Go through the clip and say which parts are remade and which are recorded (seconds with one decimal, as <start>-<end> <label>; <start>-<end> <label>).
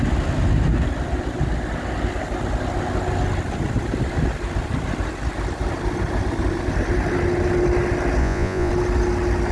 0.0-8.2 recorded; 8.2-8.7 remade; 8.7-9.5 recorded